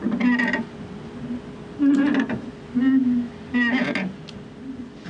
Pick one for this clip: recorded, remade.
recorded